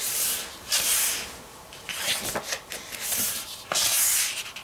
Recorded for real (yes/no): yes